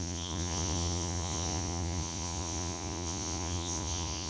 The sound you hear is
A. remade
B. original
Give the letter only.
A